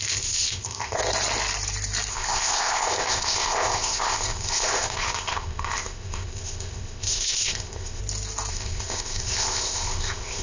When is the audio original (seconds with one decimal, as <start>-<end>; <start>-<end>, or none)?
1.0-2.1; 8.0-8.5